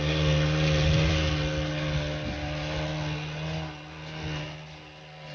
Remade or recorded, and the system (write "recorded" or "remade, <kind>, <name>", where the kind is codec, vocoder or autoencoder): recorded